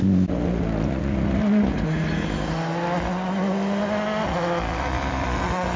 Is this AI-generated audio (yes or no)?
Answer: no